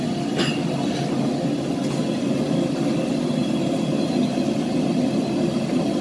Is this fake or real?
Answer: real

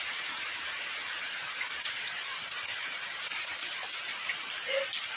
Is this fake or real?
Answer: fake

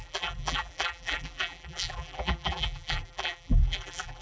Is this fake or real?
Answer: fake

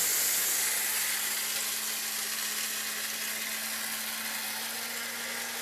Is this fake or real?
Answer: real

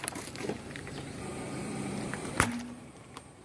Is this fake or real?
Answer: fake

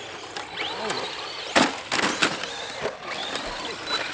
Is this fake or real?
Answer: real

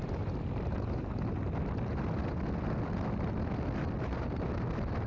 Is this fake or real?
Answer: real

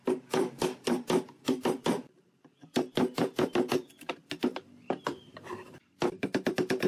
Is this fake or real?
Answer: fake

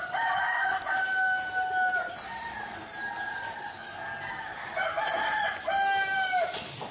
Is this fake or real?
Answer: real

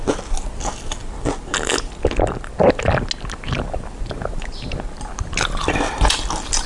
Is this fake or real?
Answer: real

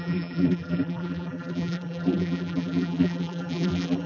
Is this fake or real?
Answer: fake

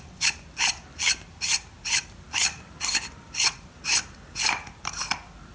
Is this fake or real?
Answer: fake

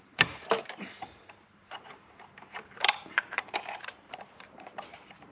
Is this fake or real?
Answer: fake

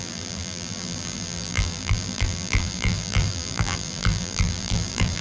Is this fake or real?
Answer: fake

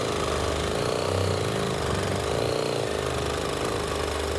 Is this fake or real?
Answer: real